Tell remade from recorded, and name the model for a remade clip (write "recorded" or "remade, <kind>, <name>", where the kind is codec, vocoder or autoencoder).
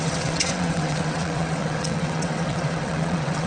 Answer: remade, vocoder, WaveNeXt